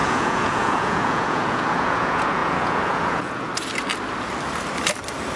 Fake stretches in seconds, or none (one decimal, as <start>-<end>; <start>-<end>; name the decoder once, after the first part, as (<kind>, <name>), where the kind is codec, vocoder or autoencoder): 0.0-3.5 (vocoder, Vocos)